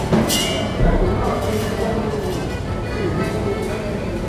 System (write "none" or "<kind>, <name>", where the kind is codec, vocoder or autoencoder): none